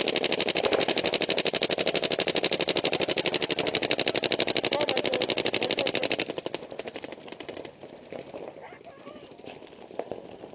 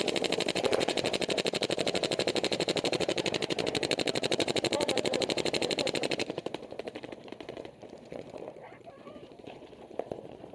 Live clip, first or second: first